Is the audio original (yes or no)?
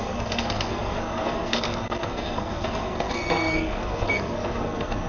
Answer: no